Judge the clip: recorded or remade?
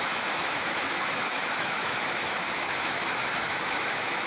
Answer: remade